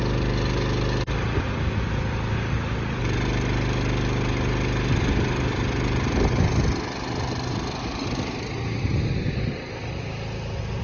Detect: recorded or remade recorded